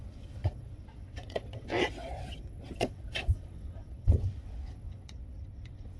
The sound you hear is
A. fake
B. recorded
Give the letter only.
A